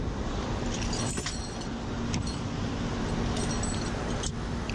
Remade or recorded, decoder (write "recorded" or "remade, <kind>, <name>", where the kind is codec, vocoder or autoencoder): remade, vocoder, BigVGAN v2